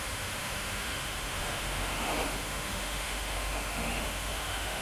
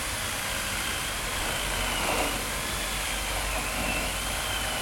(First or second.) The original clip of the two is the second